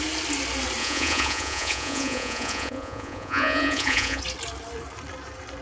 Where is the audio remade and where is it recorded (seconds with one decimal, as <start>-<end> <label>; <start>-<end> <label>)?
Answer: 0.0-0.8 recorded; 0.8-4.2 remade; 4.2-5.6 recorded

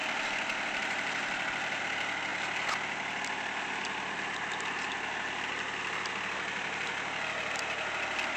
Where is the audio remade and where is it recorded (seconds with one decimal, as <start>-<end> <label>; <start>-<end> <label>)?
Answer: 0.0-1.8 remade; 1.8-8.4 recorded

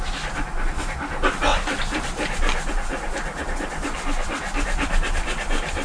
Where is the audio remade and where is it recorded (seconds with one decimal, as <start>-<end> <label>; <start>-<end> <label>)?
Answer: 0.0-1.5 recorded; 1.5-2.7 remade; 2.7-5.8 recorded

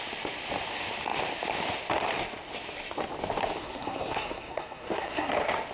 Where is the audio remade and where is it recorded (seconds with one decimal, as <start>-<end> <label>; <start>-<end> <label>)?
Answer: 0.0-3.6 recorded; 3.6-5.3 remade; 5.3-5.7 recorded

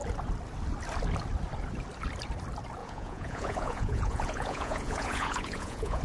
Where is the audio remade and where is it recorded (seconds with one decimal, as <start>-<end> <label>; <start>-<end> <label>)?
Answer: 0.0-2.8 recorded; 2.8-6.0 remade

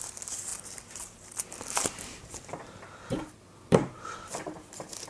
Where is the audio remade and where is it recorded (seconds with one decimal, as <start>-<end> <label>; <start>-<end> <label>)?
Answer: 0.0-5.1 remade

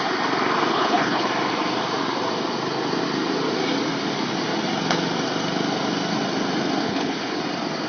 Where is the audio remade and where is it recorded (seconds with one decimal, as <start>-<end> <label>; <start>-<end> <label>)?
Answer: 0.0-0.7 recorded; 0.7-1.3 remade; 1.3-6.8 recorded; 6.8-7.4 remade; 7.4-7.9 recorded